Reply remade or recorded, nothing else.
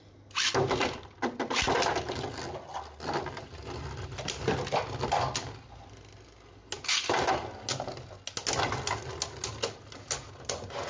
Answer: recorded